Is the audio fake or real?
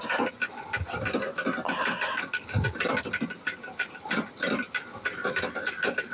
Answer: real